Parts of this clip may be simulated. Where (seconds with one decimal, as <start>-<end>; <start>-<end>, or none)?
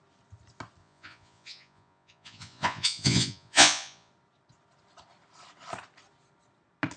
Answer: 0.8-4.1